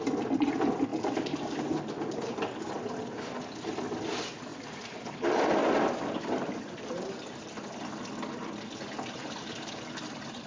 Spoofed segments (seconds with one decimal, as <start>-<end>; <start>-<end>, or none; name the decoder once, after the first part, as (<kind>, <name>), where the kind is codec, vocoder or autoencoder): 4.5-5.1 (vocoder, BigVGAN v2)